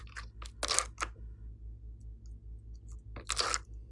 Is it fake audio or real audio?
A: real